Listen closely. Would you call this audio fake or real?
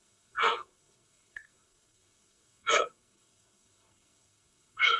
fake